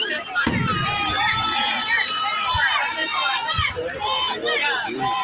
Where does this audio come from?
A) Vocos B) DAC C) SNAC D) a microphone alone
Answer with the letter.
A